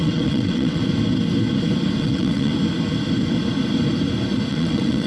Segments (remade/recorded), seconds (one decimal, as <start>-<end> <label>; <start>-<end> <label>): 0.0-0.8 remade; 0.8-2.0 recorded; 2.0-2.5 remade; 2.5-4.5 recorded; 4.5-5.1 remade